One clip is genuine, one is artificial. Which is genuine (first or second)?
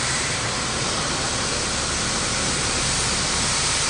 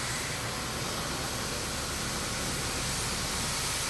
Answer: second